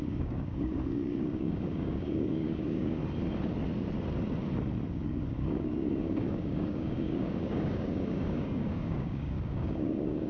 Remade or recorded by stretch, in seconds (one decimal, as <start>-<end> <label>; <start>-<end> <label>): 0.0-3.0 remade; 3.0-4.9 recorded; 4.9-10.3 remade